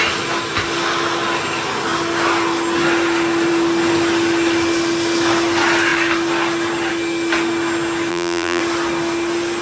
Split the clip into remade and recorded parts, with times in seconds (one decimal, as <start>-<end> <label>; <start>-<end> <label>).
0.0-8.1 recorded; 8.1-8.6 remade; 8.6-9.6 recorded